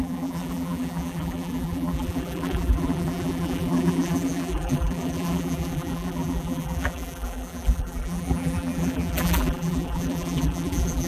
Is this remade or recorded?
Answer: remade